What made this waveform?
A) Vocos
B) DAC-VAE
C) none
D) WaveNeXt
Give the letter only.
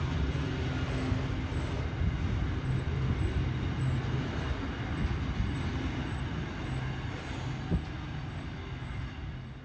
C